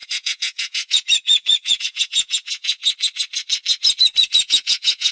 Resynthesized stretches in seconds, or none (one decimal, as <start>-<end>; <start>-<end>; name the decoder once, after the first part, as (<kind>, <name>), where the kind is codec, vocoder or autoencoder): 0.0-2.8 (vocoder, Vocos); 4.2-5.1